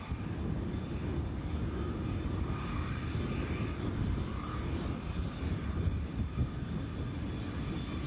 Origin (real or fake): real